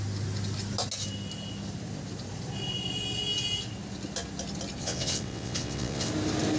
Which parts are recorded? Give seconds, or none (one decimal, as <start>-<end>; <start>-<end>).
0.0-4.8; 6.1-6.6